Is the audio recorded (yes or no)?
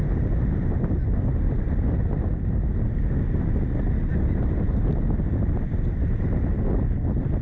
yes